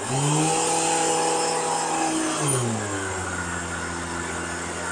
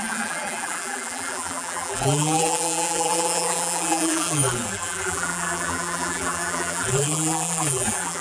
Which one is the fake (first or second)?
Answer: second